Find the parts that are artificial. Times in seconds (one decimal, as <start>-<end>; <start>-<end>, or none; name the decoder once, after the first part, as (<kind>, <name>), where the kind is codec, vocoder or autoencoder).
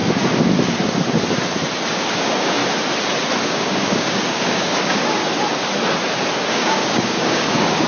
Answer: 1.9-2.6 (codec, DAC); 3.4-5.2; 6.5-7.9